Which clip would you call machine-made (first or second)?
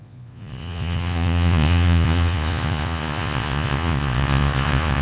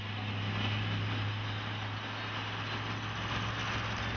first